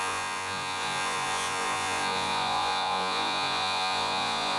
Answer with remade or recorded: remade